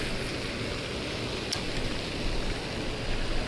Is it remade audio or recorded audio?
recorded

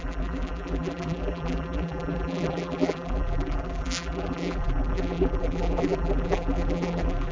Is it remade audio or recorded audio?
remade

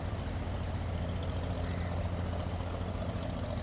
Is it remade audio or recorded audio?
recorded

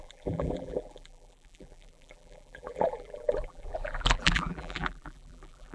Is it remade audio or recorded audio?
remade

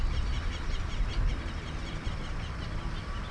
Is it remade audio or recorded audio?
recorded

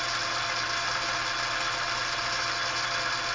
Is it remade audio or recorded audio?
recorded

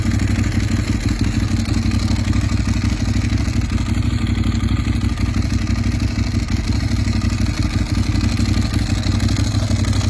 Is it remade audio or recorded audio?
recorded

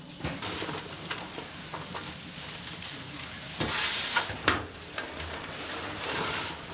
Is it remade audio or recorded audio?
recorded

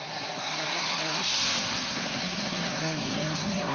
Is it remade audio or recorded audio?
remade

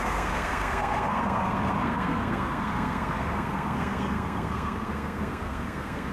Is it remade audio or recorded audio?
remade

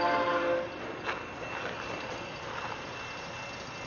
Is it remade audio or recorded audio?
recorded